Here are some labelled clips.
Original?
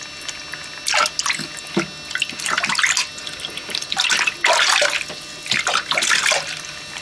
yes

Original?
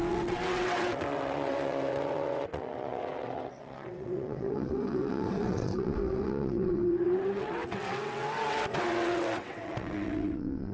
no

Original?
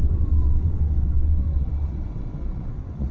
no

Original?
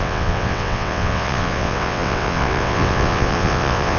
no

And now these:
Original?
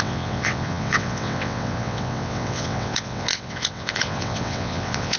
no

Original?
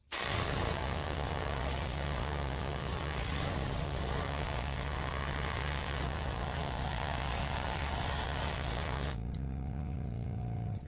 no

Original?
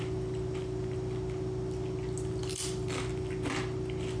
yes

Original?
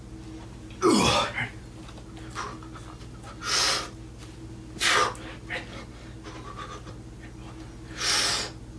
yes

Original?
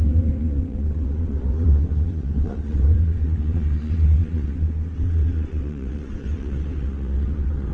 no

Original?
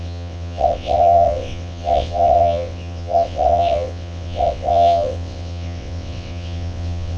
no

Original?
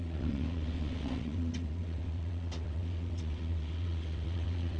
no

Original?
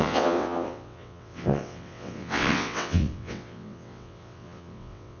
no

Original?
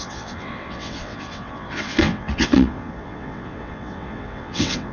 no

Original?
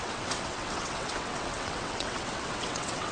no